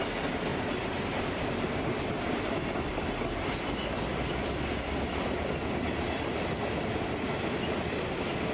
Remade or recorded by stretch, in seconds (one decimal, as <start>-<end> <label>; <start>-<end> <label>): 0.0-8.5 recorded